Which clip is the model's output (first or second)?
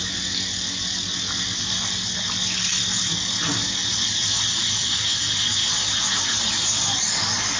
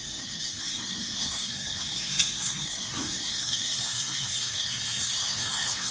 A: second